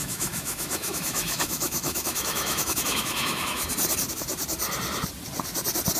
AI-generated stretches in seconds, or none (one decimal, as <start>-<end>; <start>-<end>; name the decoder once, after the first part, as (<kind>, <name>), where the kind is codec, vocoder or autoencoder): 0.0-3.6 (autoencoder, DAC-VAE)